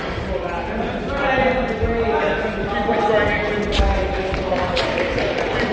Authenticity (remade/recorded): recorded